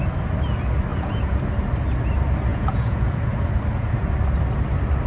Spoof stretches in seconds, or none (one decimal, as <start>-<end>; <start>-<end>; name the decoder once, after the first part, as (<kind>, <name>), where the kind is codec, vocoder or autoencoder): 0.9-1.4 (vocoder, Vocos); 2.5-3.5

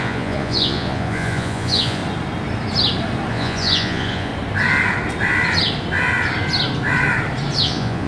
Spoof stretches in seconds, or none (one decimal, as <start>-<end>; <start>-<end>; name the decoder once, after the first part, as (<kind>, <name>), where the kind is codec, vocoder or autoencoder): 0.0-2.0 (vocoder, Vocos); 3.3-4.3; 7.6-8.1

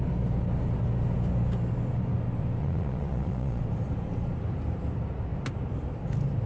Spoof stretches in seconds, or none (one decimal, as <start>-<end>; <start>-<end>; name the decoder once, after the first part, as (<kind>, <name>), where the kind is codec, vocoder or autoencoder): 2.6-3.6 (vocoder, Vocos)

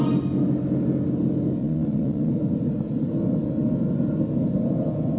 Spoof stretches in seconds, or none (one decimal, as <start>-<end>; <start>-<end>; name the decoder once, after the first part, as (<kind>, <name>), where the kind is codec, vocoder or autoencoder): 1.6-2.3 (vocoder, Vocos)

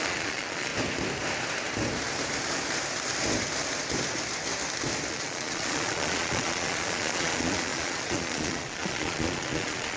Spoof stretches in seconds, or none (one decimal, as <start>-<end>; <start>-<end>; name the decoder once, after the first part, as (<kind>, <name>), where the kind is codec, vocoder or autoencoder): 0.0-0.7 (vocoder, Vocos); 5.1-10.0

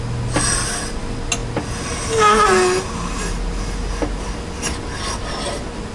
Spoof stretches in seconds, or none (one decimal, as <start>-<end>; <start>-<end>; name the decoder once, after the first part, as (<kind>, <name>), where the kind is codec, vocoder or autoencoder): none

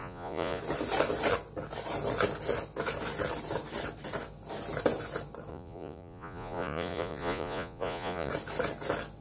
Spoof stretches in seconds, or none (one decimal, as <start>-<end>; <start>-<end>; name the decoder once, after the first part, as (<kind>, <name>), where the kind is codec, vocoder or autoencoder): 0.0-0.6 (vocoder, Vocos); 5.5-8.3

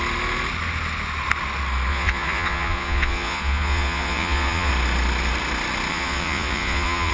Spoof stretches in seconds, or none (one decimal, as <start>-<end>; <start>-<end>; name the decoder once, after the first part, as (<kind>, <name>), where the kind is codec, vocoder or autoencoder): 1.9-4.7 (vocoder, Vocos); 5.9-7.1